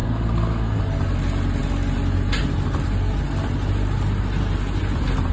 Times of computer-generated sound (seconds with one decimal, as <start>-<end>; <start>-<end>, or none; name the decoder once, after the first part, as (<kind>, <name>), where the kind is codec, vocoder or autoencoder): 0.0-0.8 (codec, SNAC)